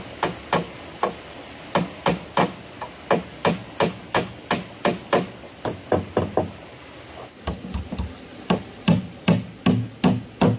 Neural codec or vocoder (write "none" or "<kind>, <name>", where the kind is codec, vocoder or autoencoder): none